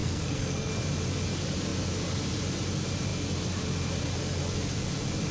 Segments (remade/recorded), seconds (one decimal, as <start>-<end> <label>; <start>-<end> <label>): 0.0-0.7 remade; 0.7-5.3 recorded